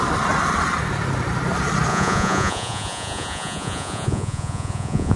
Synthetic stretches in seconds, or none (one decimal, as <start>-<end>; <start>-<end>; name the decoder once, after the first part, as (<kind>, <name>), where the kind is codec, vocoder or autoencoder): 1.9-5.2 (vocoder, Vocos)